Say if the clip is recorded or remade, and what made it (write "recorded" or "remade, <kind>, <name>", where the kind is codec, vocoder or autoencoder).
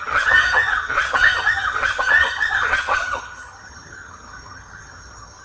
remade, vocoder, HiFi-GAN